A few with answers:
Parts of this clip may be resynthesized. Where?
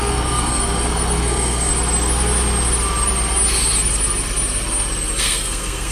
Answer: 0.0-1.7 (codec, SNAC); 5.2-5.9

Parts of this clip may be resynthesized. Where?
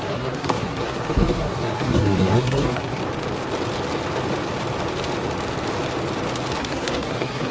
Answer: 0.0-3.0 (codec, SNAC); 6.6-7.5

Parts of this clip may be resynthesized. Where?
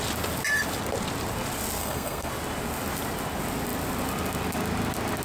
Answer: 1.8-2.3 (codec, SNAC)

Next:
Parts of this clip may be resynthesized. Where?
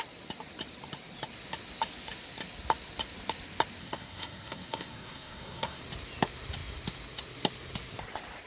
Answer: 3.8-5.8 (codec, SNAC)